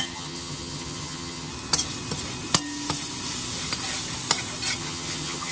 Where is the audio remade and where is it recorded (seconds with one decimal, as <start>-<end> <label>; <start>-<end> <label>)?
0.0-1.5 remade; 1.5-4.8 recorded; 4.8-5.5 remade